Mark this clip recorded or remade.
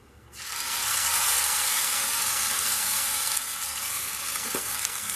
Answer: remade